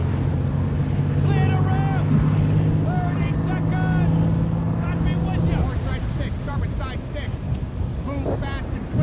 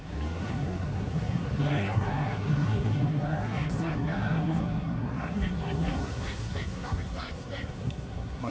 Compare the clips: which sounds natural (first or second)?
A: first